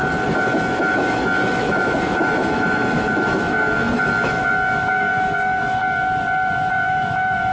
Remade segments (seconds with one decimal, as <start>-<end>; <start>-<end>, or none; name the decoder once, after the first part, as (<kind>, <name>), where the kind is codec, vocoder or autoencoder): 0.0-5.8 (autoencoder, DAC-VAE); 6.7-7.5